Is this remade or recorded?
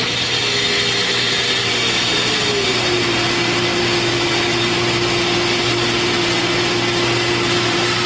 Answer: recorded